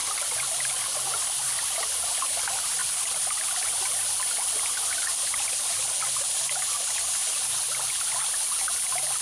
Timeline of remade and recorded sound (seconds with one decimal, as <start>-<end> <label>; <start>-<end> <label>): 0.0-2.8 recorded; 2.8-3.4 remade; 3.4-7.2 recorded; 7.2-7.9 remade; 7.9-9.2 recorded